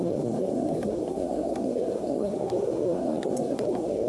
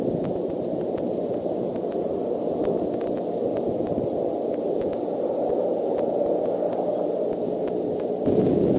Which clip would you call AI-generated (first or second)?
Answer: first